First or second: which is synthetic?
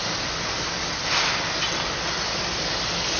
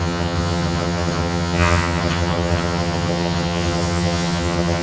second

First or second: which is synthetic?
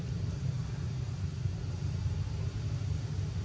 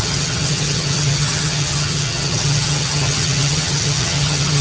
second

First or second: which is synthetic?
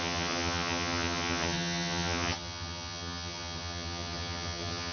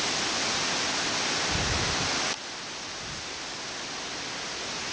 first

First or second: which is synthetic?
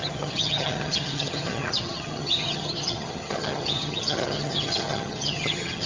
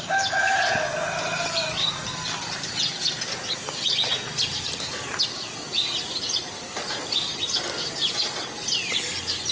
first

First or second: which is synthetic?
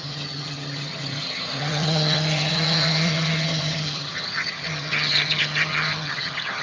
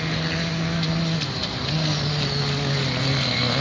first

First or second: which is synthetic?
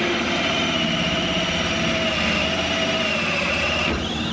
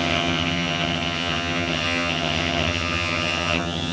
second